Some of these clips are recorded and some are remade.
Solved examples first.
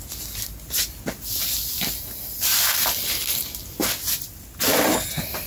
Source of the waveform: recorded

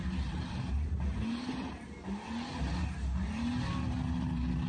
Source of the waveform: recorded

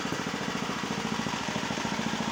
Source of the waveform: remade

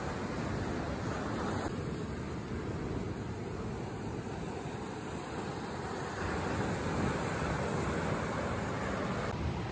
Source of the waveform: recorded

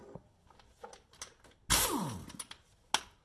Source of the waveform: recorded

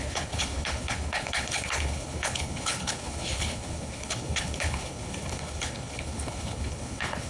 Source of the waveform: remade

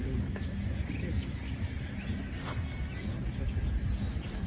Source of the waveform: recorded